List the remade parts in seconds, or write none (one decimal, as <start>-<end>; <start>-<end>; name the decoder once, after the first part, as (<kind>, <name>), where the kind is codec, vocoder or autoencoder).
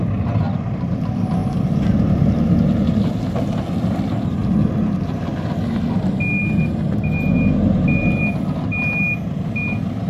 none